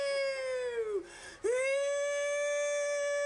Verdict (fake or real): real